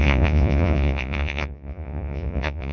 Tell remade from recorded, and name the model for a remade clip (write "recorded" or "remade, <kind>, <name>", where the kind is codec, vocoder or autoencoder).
remade, vocoder, Vocos